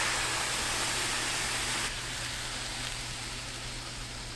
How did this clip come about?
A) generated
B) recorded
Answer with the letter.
B